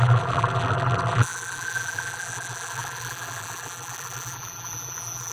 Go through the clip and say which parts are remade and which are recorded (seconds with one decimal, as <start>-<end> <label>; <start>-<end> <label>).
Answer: 0.0-5.3 remade

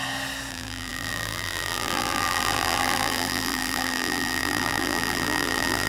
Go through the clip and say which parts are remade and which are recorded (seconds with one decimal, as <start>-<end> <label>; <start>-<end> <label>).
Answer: 0.0-0.5 recorded; 0.5-5.9 remade

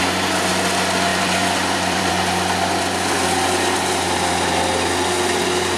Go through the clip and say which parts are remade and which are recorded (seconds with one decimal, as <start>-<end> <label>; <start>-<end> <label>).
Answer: 0.0-1.1 recorded; 1.1-2.1 remade; 2.1-5.8 recorded

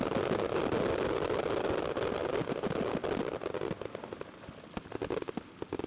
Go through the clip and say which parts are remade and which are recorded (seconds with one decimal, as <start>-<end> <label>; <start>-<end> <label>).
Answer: 0.0-2.2 recorded; 2.2-5.9 remade